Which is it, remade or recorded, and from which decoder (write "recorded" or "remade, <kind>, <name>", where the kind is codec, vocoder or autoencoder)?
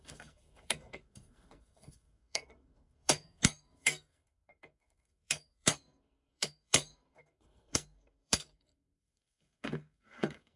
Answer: remade, codec, SNAC